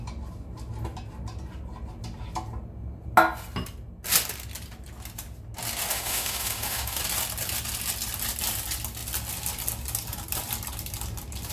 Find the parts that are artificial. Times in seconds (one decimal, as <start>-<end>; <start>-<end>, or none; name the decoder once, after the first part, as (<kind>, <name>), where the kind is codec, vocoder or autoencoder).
5.9-7.0 (autoencoder, DAC-VAE)